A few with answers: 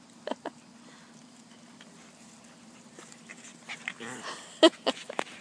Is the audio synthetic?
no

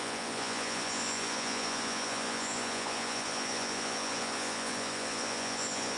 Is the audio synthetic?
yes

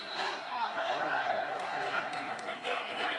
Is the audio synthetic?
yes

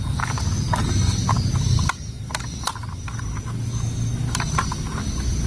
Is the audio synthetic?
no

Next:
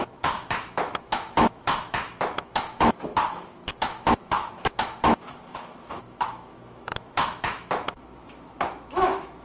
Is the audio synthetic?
yes